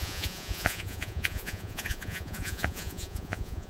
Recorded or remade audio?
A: remade